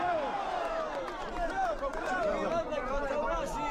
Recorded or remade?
remade